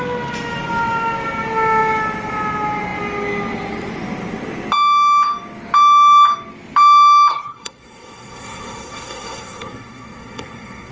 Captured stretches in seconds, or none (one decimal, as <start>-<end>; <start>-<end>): 0.0-7.3